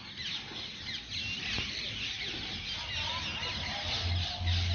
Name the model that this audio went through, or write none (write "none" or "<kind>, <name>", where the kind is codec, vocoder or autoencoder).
none